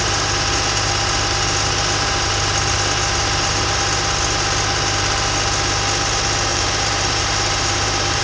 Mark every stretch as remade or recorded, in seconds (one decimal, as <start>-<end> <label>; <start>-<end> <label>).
0.0-6.5 recorded; 6.5-8.2 remade